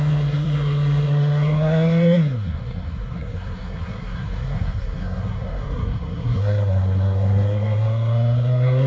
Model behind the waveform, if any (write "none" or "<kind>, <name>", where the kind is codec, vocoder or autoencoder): codec, SNAC